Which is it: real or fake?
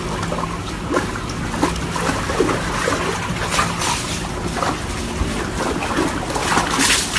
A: real